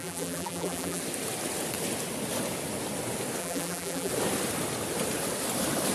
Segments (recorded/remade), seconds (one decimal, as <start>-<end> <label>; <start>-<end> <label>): 0.0-1.0 remade; 1.0-3.4 recorded; 3.4-4.1 remade; 4.1-5.9 recorded